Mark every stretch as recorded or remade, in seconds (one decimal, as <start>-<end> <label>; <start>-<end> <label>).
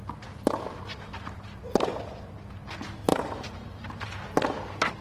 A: 0.0-2.0 remade; 2.0-3.1 recorded; 3.1-4.1 remade; 4.1-5.0 recorded